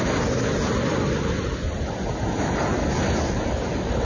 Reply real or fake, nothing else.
real